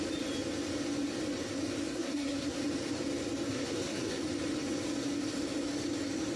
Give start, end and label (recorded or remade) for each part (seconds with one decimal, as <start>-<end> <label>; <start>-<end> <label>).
0.0-1.9 recorded; 1.9-2.6 remade; 2.6-3.5 recorded; 3.5-4.2 remade; 4.2-6.4 recorded